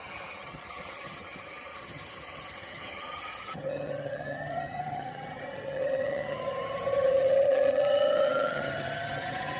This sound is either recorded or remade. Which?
remade